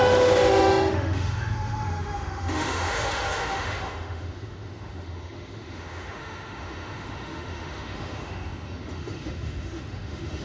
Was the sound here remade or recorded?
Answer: remade